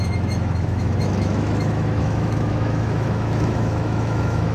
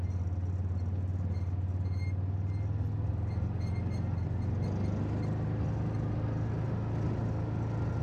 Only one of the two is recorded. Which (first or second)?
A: second